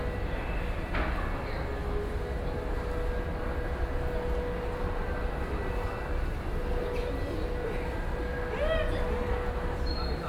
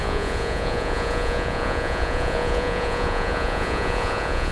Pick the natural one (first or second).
first